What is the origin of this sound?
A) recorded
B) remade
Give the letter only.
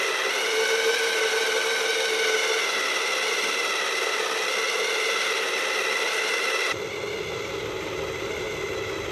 A